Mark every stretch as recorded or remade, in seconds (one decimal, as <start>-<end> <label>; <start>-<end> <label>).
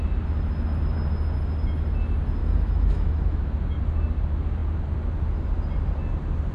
0.0-2.4 recorded; 2.4-3.8 remade; 3.8-6.5 recorded